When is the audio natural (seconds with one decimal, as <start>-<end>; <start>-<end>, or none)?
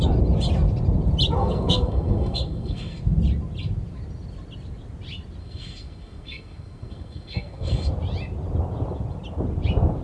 0.0-1.4; 3.0-5.4; 7.9-10.0